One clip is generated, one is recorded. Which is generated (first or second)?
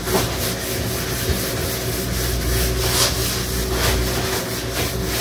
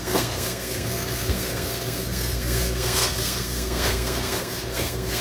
second